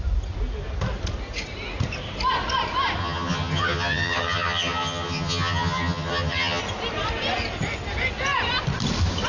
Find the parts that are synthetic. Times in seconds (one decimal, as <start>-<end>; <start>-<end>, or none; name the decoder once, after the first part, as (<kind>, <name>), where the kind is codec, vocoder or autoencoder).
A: 3.0-6.6 (vocoder, HiFi-GAN)